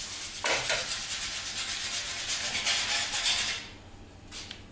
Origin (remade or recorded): recorded